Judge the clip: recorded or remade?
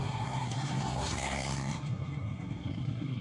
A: remade